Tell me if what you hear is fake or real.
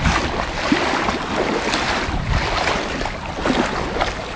real